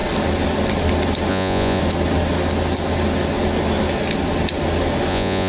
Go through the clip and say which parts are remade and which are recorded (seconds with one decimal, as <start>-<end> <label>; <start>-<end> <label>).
0.0-1.3 recorded; 1.3-1.8 remade; 1.8-5.1 recorded; 5.1-5.5 remade